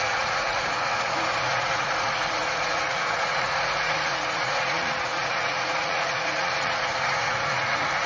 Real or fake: fake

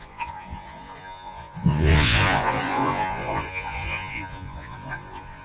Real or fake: fake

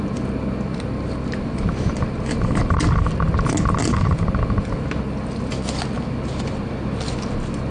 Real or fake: real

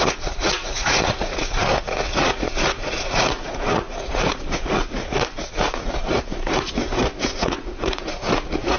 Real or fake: fake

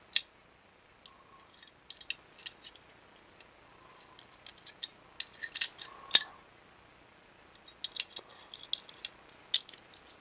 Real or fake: real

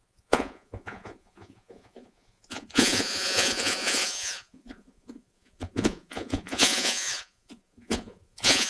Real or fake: fake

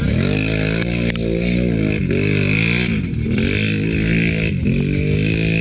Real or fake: real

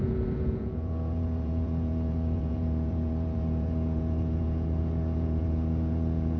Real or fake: fake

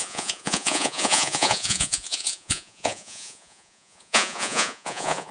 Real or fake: fake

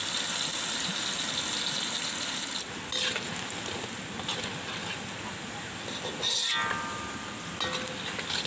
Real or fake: real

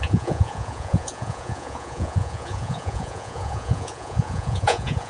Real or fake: fake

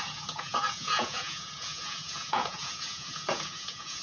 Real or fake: fake